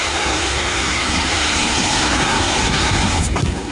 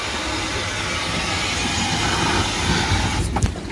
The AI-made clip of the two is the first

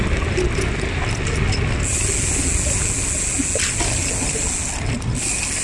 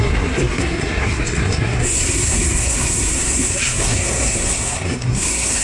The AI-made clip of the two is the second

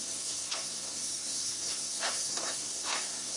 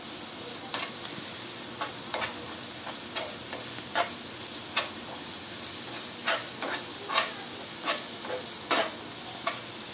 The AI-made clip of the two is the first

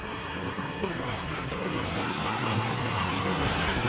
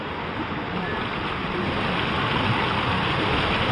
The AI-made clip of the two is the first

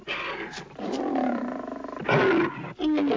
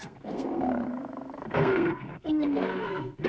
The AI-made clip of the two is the second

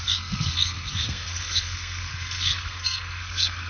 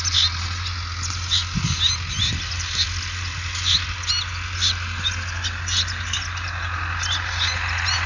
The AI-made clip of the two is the first